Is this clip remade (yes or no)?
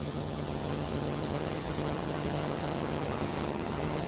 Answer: yes